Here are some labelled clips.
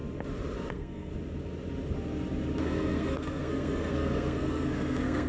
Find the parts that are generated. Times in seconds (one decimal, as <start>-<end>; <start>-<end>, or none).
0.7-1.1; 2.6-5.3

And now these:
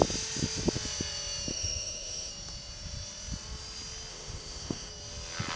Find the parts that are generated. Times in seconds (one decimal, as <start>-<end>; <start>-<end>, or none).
1.5-2.3; 4.1-4.9

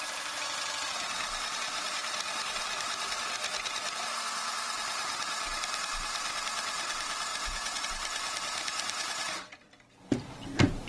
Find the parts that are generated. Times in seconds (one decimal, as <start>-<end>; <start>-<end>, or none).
7.3-7.8

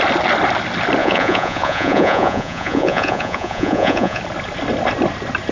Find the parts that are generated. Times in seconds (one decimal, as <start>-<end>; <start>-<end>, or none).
1.0-4.2

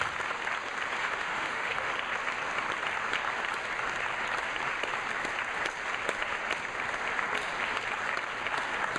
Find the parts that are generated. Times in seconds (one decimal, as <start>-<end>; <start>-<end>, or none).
1.0-1.9

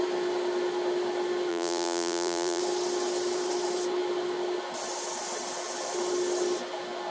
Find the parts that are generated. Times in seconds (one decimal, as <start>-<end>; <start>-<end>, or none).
1.5-2.6